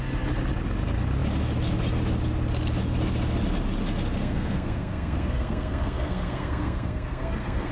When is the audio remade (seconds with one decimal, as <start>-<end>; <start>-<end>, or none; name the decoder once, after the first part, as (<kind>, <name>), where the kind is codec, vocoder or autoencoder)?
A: 4.2-7.7 (codec, SNAC)